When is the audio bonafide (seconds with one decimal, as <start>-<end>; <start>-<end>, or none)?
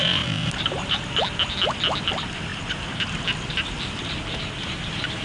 1.2-5.2